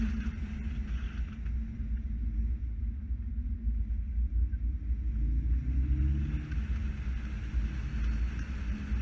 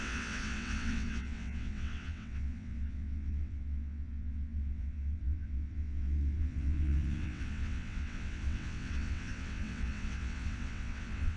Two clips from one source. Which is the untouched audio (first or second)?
first